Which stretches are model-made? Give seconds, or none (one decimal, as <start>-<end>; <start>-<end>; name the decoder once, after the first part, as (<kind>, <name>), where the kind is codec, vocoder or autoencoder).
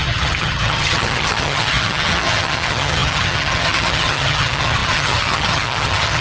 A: 0.0-6.2 (vocoder, HiFi-GAN)